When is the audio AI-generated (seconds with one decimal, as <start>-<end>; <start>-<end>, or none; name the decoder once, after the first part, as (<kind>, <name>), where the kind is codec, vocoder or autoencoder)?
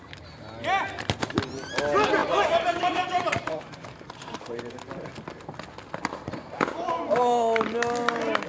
2.2-4.8 (vocoder, BigVGAN v2)